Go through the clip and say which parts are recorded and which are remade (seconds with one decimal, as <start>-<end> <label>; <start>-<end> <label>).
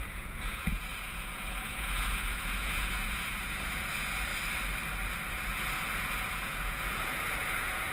0.0-4.3 remade; 4.3-5.3 recorded; 5.3-7.9 remade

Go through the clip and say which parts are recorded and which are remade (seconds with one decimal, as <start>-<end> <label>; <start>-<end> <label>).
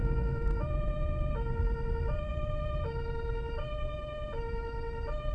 0.0-2.3 recorded; 2.3-3.3 remade; 3.3-5.3 recorded